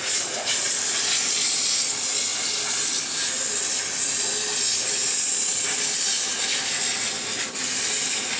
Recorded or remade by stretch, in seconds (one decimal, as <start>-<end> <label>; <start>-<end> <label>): 0.0-8.4 recorded